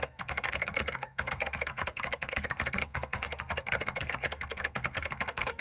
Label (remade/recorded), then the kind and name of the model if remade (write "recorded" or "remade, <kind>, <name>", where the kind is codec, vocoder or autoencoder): remade, codec, SNAC